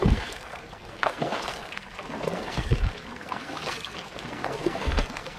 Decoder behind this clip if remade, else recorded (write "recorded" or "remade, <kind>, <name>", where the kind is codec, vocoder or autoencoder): remade, codec, SNAC